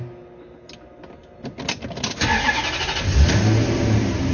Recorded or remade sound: recorded